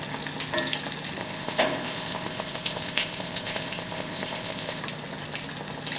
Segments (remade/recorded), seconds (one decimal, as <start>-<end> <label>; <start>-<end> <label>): 0.0-1.2 recorded; 1.2-4.8 remade; 4.8-6.0 recorded

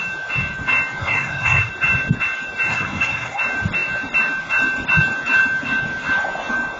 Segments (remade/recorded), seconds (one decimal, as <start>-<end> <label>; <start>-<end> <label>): 0.0-1.0 recorded; 1.0-1.7 remade; 1.7-2.7 recorded; 2.7-3.4 remade; 3.4-6.8 recorded

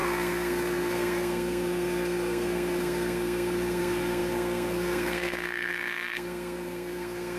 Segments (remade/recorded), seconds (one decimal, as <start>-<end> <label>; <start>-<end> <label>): 0.0-7.4 remade

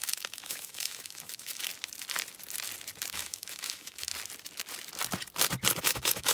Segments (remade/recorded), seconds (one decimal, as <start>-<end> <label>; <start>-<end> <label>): 0.0-1.7 remade; 1.7-3.1 recorded; 3.1-4.1 remade; 4.1-5.8 recorded; 5.8-6.3 remade